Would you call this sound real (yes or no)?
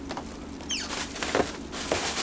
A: yes